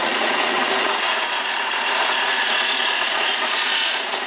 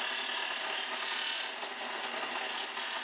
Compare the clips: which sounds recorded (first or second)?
second